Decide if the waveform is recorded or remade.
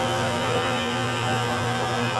remade